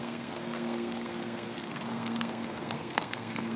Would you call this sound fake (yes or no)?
yes